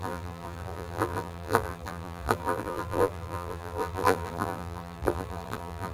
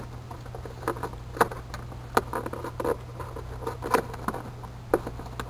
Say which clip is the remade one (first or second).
first